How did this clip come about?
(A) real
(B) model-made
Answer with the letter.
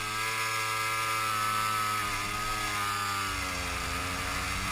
A